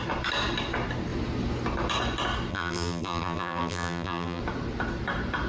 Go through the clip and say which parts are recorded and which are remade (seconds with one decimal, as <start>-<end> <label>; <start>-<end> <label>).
0.0-2.5 recorded; 2.5-4.4 remade; 4.4-5.5 recorded

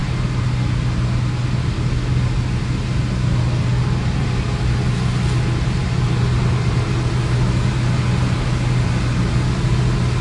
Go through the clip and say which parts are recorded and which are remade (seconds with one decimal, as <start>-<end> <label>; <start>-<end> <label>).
0.0-10.2 recorded

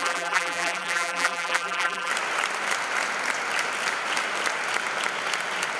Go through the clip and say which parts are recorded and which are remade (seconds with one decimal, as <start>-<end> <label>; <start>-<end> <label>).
0.0-2.1 remade; 2.1-5.8 recorded

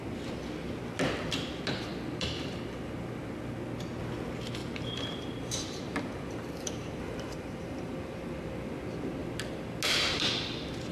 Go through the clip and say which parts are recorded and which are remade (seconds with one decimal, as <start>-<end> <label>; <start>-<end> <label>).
0.0-4.6 recorded; 4.6-7.9 remade; 7.9-10.9 recorded

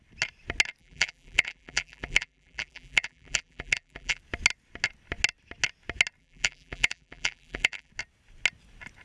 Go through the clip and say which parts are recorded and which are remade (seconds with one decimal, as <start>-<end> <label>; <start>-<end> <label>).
0.0-0.8 recorded; 0.8-4.2 remade; 4.2-6.2 recorded; 6.2-7.9 remade; 7.9-9.0 recorded